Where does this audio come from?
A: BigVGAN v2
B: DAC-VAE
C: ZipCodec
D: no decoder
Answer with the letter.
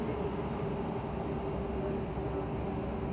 D